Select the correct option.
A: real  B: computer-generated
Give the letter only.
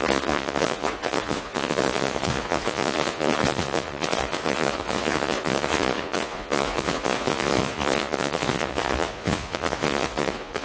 B